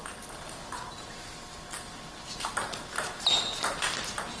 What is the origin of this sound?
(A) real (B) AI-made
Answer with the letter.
A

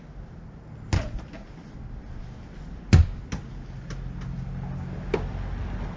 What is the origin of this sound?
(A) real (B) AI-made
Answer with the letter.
A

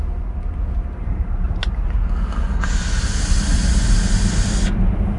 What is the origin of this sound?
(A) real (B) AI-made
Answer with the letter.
A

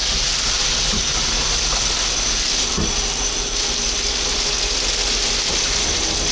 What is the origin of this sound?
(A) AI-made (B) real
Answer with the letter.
B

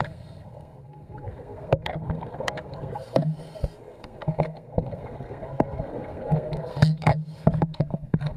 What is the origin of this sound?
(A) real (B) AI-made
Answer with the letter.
B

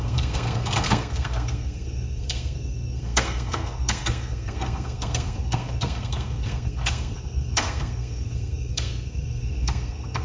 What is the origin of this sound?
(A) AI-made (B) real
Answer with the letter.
A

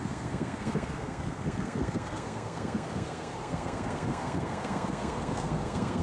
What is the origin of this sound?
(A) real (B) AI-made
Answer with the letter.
B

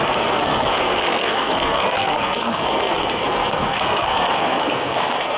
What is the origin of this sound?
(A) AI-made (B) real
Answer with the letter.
A